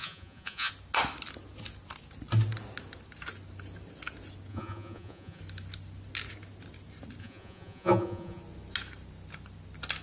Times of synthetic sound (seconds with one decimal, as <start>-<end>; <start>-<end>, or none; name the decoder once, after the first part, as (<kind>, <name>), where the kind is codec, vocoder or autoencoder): 0.0-0.7 (vocoder, Vocos); 4.5-5.4; 7.2-8.4